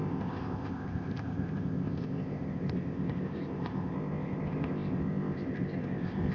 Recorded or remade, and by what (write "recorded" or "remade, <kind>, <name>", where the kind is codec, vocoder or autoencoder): remade, codec, ZipCodec